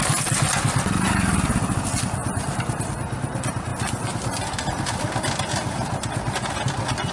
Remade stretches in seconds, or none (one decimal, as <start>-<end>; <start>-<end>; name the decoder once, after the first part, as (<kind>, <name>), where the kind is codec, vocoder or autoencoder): 2.2-2.9 (vocoder, BigVGAN v2)